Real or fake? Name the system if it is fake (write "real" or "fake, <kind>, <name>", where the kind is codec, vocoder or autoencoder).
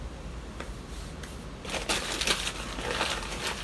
real